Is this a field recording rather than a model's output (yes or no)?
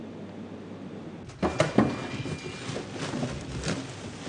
yes